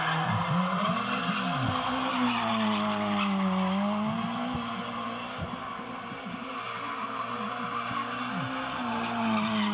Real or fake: real